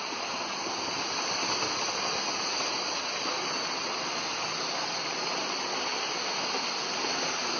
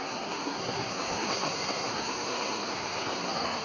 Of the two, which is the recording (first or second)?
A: first